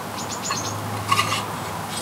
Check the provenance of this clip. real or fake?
real